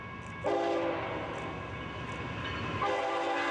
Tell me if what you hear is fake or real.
real